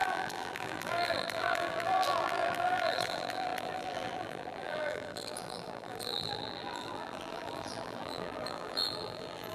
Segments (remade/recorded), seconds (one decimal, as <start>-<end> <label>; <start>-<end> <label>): 0.0-9.5 remade

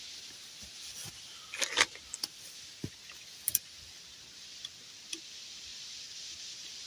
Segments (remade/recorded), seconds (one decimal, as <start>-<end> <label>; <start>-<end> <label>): 0.0-6.9 recorded